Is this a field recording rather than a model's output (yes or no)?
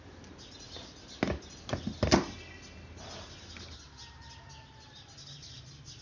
yes